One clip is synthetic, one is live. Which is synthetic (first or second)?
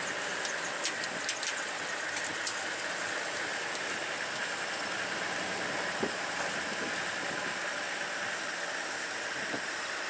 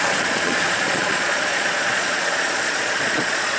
second